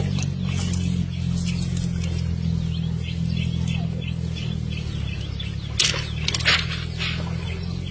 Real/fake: real